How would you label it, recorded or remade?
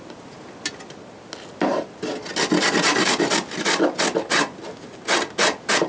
recorded